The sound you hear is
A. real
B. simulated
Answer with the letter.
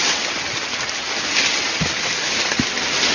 A